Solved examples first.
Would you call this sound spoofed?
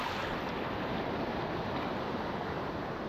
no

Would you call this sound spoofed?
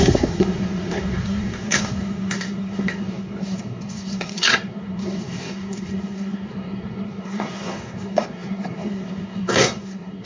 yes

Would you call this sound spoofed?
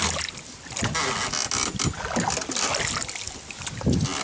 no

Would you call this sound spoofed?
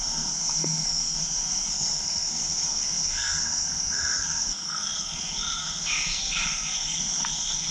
yes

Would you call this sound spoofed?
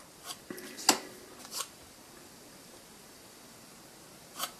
no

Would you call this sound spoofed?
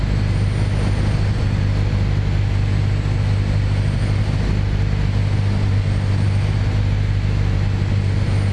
no